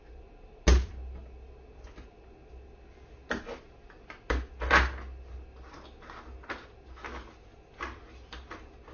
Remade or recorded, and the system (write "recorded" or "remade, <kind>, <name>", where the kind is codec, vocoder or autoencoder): recorded